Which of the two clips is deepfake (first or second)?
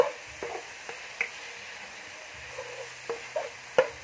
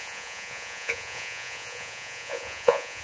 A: second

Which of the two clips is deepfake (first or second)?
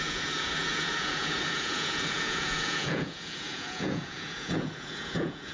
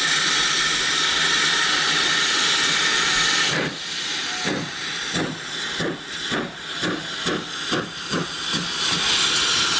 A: first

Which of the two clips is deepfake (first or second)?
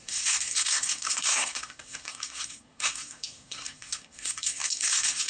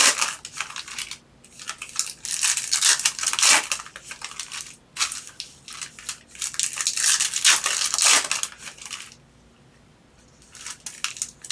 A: first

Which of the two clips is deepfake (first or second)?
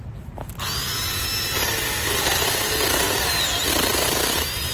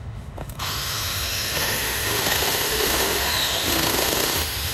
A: second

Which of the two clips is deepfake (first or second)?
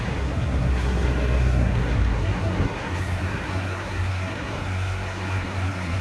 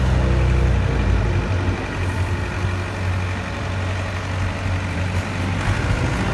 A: first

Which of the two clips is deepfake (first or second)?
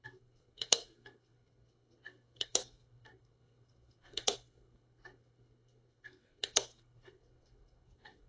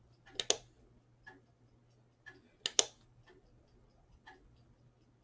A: first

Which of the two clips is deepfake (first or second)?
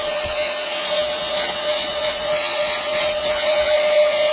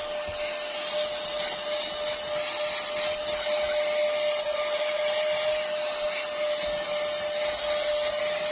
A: first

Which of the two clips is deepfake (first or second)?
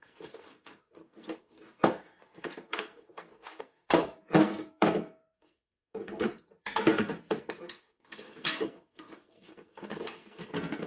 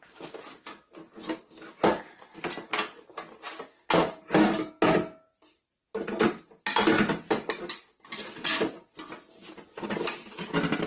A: first